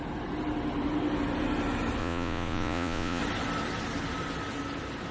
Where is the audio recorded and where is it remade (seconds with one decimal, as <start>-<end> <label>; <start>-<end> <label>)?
0.0-2.0 recorded; 2.0-3.2 remade; 3.2-5.1 recorded